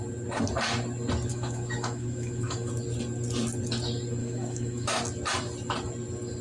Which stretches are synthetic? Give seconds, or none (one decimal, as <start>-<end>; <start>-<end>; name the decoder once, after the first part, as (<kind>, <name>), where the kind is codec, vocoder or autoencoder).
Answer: 1.3-2.7 (autoencoder, DAC-VAE); 4.2-5.0